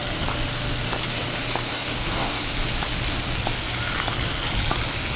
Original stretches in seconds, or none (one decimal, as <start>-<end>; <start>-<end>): 0.0-1.7; 2.4-5.2